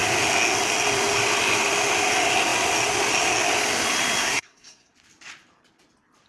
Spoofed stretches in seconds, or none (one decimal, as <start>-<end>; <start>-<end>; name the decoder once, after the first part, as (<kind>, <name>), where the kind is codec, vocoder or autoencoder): 4.2-4.9 (codec, SNAC)